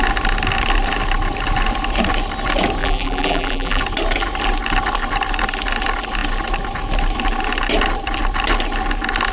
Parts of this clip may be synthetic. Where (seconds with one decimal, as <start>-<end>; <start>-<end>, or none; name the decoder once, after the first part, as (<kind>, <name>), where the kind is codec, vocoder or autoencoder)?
2.8-3.8 (vocoder, BigVGAN v2)